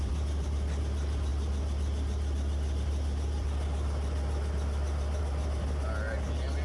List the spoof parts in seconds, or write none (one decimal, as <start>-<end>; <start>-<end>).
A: none